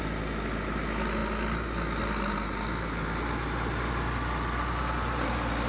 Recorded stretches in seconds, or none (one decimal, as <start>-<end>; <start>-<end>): 0.0-5.7